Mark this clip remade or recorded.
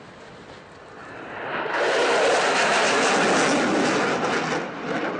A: recorded